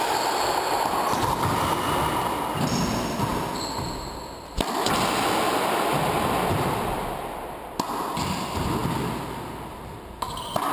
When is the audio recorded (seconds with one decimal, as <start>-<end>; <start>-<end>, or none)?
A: 0.0-10.7